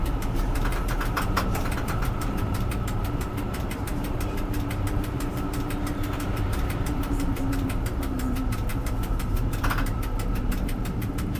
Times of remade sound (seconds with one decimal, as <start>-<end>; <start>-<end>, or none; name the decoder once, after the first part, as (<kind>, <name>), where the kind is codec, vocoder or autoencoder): 0.0-11.4 (vocoder, BigVGAN v2)